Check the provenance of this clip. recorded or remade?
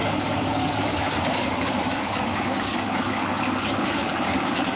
remade